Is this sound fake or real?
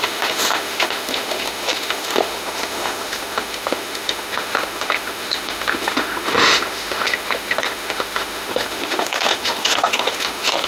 fake